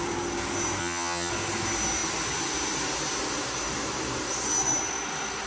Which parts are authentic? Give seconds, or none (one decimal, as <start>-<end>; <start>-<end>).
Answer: 0.0-0.8; 1.3-5.5